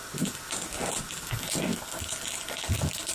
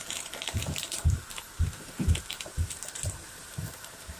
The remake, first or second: second